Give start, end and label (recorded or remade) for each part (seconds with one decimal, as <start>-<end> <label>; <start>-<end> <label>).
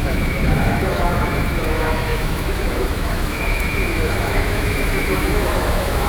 0.0-6.1 remade